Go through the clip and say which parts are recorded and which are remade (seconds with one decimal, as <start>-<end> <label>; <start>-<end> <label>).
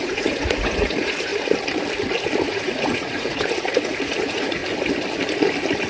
0.0-1.3 remade; 1.3-2.5 recorded; 2.5-4.6 remade; 4.6-5.9 recorded